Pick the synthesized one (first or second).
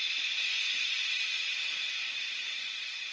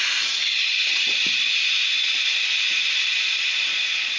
first